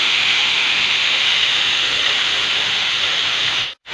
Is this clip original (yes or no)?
no